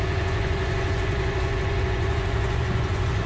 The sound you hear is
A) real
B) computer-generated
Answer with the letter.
B